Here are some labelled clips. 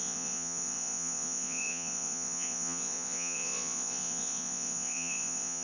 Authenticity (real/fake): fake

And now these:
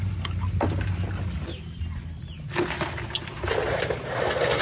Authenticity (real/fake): real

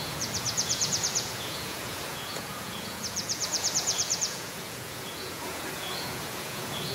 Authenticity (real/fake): fake